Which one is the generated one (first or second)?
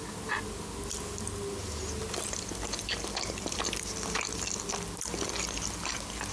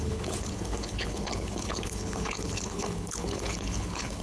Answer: second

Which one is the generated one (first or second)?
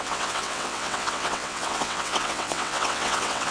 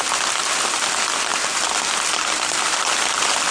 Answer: first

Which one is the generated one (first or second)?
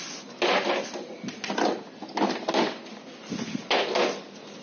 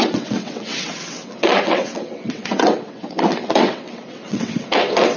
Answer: second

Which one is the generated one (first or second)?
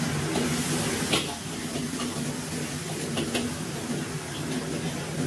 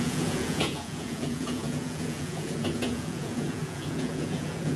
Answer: second